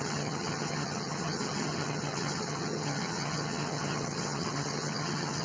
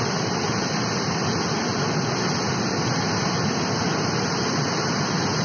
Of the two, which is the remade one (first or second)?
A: first